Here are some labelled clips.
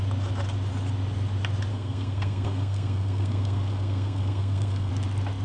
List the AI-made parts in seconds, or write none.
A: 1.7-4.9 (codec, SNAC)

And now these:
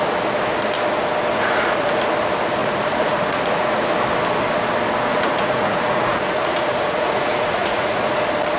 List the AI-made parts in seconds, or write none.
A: 1.3-2.1 (vocoder, Vocos); 2.6-3.9; 5.1-8.2

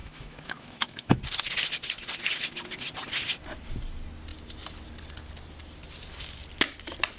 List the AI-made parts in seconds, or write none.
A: 0.0-1.2 (autoencoder, DAC-VAE)

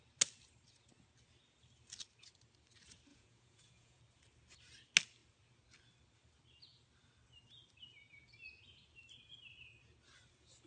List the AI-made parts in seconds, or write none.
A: 3.1-4.0 (vocoder, Vocos)

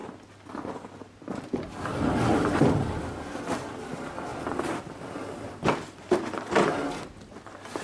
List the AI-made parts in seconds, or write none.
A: 1.9-3.0 (vocoder, BigVGAN v2); 4.3-7.0

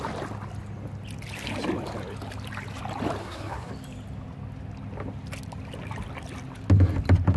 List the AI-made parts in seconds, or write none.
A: 3.2-3.7 (codec, SNAC)

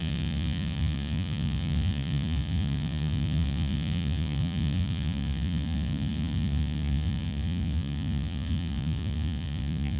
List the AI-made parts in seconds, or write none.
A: 0.0-10.0 (vocoder, Vocos)

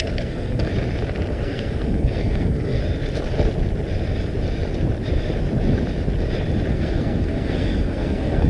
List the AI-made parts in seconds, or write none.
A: 0.0-0.7 (codec, SNAC); 1.3-2.8; 6.7-8.5